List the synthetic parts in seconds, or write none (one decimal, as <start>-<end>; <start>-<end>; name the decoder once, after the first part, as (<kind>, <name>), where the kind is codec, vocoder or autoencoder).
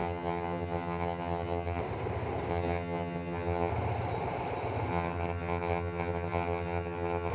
0.0-1.8 (vocoder, HiFi-GAN); 2.5-3.7; 4.9-7.3